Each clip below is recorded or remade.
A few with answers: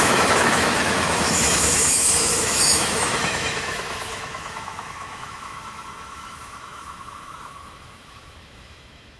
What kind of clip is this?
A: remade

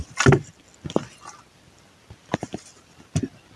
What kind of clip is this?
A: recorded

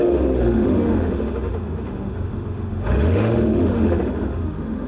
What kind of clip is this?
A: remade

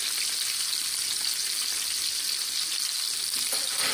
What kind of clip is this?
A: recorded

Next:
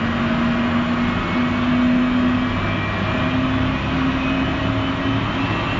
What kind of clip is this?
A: recorded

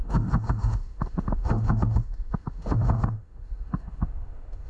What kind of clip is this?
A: remade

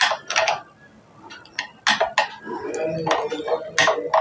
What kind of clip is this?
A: recorded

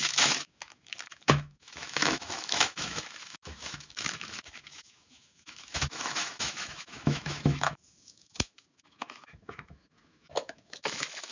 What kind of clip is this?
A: remade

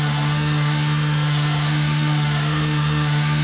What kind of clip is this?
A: remade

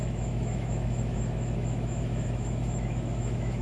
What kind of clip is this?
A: remade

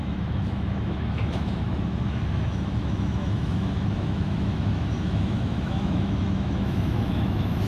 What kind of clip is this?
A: remade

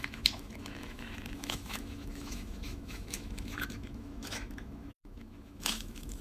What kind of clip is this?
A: remade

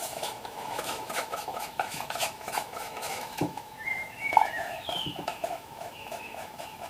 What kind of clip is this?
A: remade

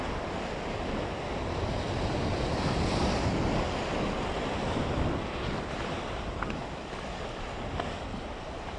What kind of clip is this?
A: recorded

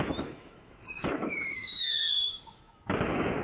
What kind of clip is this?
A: remade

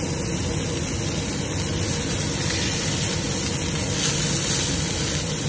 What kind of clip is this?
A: recorded